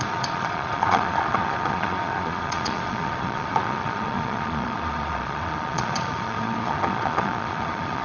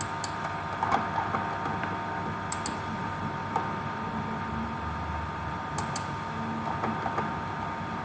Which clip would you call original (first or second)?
second